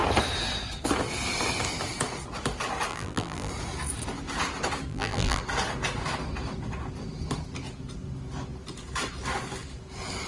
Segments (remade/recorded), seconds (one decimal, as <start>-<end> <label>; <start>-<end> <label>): 0.0-2.9 recorded; 2.9-3.5 remade; 3.5-4.9 recorded; 4.9-5.4 remade; 5.4-10.3 recorded